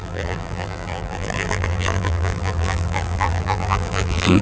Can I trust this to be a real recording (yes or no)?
no